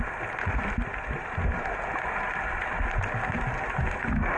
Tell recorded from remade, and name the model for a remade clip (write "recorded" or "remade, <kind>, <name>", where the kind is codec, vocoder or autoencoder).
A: recorded